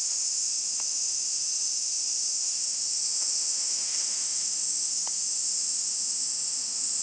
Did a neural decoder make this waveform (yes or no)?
yes